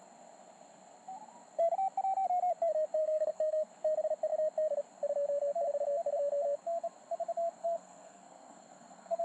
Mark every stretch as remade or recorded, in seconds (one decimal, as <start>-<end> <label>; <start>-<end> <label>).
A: 0.0-3.0 recorded; 3.0-3.7 remade; 3.7-7.6 recorded; 7.6-9.2 remade